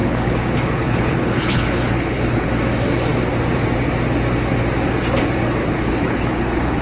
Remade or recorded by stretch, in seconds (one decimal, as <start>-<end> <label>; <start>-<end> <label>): 0.0-2.5 remade; 2.5-5.6 recorded; 5.6-6.8 remade